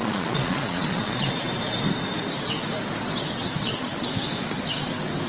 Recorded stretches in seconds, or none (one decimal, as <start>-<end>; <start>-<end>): 1.3-3.6; 4.1-5.3